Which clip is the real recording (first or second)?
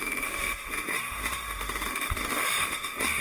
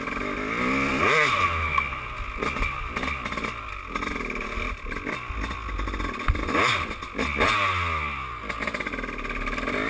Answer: second